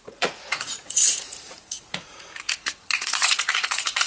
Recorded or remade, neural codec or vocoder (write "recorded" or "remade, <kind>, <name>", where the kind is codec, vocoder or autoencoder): remade, vocoder, Vocos